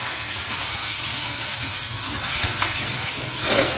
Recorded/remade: remade